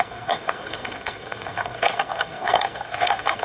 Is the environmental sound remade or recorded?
remade